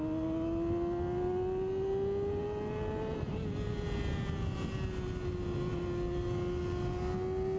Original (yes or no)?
yes